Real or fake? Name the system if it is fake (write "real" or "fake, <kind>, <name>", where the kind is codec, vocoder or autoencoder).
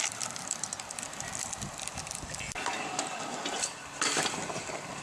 fake, vocoder, BigVGAN v2